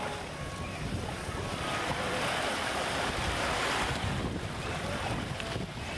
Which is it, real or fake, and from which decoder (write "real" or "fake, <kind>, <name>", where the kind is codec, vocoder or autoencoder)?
real